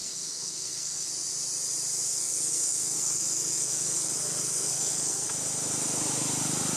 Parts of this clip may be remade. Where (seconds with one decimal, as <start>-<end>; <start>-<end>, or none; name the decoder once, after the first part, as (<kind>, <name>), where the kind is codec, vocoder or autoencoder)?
0.0-1.1 (codec, SNAC); 2.1-5.3